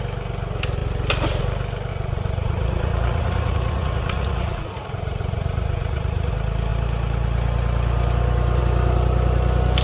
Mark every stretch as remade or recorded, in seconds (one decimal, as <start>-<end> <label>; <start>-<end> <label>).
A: 0.0-1.9 recorded; 1.9-6.3 remade; 6.3-9.8 recorded